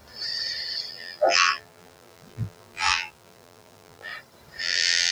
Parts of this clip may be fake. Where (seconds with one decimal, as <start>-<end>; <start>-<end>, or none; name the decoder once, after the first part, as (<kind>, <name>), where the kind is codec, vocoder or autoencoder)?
0.9-4.1 (vocoder, BigVGAN v2); 4.6-5.1